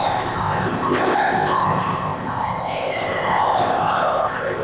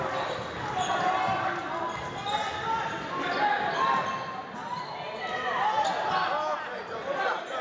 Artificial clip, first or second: first